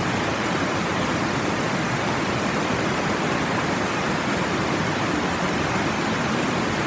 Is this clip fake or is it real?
fake